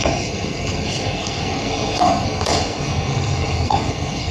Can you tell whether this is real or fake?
fake